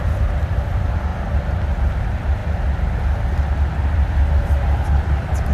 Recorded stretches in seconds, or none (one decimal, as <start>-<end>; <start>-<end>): 1.1-2.0